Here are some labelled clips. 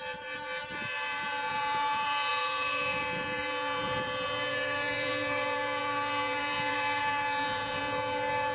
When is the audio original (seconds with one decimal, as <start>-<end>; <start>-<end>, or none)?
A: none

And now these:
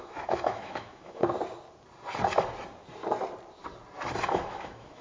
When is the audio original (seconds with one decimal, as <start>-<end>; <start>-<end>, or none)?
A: 1.2-4.2

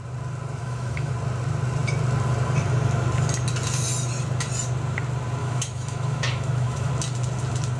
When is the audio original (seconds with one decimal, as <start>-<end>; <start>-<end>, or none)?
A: 0.0-0.6; 1.1-5.4; 6.9-7.8